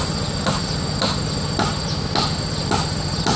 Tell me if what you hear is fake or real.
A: real